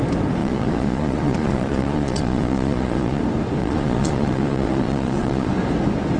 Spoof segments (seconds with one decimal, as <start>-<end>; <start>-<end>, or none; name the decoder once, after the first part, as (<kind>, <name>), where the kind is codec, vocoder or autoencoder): 0.4-3.2 (vocoder, Vocos); 3.6-5.5